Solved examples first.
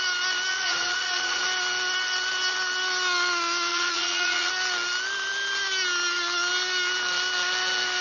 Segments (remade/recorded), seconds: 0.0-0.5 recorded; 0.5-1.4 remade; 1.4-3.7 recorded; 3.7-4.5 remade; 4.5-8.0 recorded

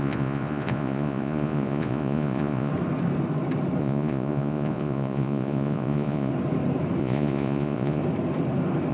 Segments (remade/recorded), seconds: 0.0-2.7 remade; 2.7-3.8 recorded; 3.8-6.3 remade; 6.3-7.0 recorded; 7.0-8.0 remade; 8.0-8.9 recorded

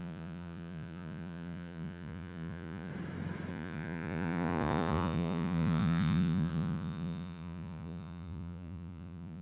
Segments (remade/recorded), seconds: 0.0-2.9 remade; 2.9-3.5 recorded; 3.5-9.4 remade

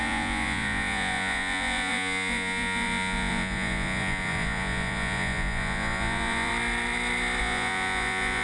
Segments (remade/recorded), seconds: 0.0-6.5 remade; 6.5-7.4 recorded; 7.4-8.4 remade

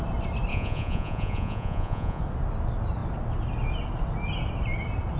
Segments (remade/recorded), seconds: 0.0-0.5 recorded; 0.5-2.2 remade; 2.2-5.2 recorded

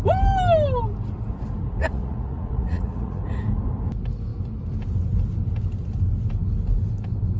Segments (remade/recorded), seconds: 0.0-1.8 recorded; 1.8-3.4 remade; 3.4-7.4 recorded

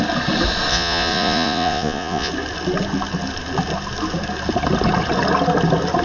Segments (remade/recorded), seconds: 0.0-0.7 recorded; 0.7-2.3 remade; 2.3-6.0 recorded